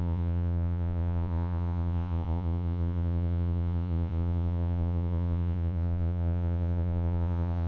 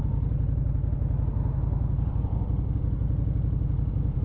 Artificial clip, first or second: first